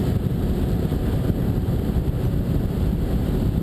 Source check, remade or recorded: remade